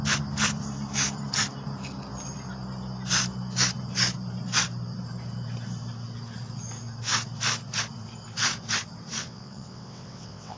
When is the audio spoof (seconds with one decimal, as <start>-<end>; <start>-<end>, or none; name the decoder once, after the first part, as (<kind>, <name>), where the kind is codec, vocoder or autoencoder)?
9.2-10.6 (vocoder, WaveNeXt)